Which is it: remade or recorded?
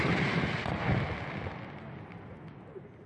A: recorded